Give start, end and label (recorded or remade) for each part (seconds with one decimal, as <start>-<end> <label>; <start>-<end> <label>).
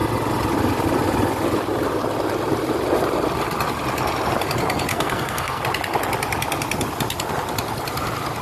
0.0-4.9 recorded; 4.9-5.6 remade; 5.6-8.4 recorded